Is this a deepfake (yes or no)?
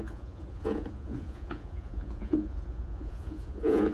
yes